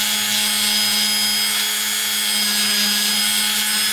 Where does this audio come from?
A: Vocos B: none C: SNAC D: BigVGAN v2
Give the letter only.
B